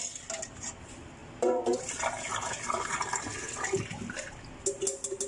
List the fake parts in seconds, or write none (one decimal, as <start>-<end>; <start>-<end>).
none